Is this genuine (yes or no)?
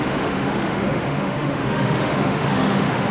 no